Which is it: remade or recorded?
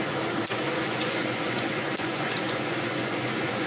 remade